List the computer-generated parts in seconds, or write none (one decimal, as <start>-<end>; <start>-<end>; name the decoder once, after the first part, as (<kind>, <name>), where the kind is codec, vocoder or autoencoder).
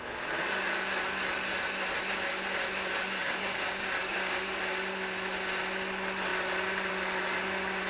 3.2-4.6 (codec, DAC)